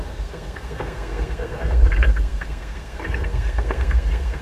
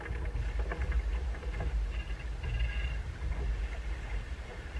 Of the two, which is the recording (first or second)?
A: second